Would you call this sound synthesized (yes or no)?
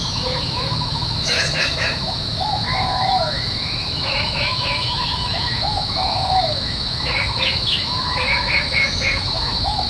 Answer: yes